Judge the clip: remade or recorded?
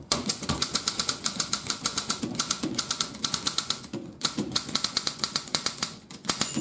remade